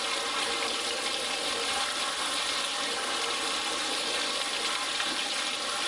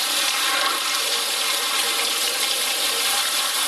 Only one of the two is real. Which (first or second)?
first